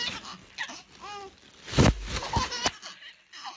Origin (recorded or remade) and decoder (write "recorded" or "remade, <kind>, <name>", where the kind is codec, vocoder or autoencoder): recorded